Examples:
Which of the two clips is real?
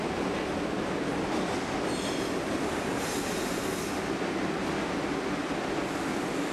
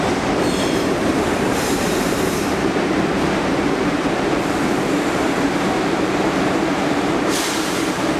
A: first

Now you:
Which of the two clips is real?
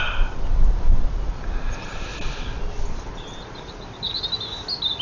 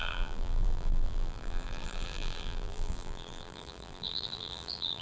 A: first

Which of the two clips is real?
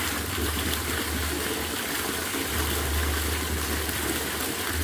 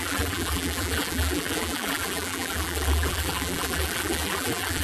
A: first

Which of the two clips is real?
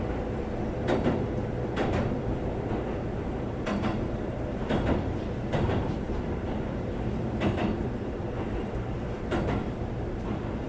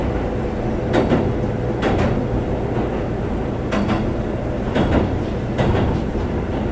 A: second